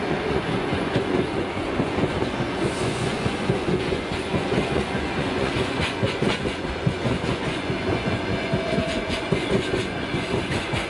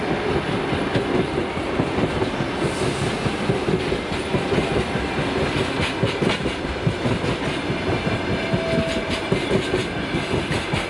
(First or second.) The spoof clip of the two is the first